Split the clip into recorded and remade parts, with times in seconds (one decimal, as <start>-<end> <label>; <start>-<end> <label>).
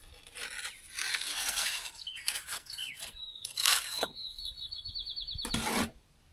0.0-1.1 recorded; 1.1-4.9 remade; 4.9-6.3 recorded